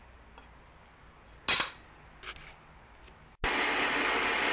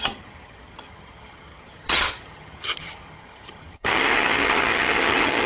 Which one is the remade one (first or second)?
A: second